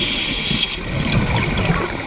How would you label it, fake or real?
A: real